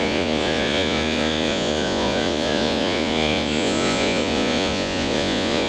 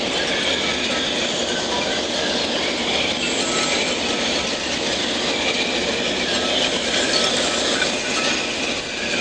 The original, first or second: second